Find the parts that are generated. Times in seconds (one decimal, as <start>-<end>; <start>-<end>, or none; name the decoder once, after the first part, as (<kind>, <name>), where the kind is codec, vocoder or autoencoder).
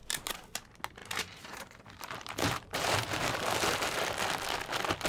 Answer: 1.0-4.1 (vocoder, BigVGAN v2)